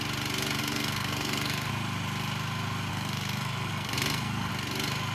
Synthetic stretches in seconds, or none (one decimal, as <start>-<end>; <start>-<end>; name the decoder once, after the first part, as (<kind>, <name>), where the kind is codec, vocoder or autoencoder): 0.6-1.7 (codec, SNAC); 2.9-4.5